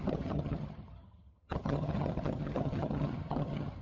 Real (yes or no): no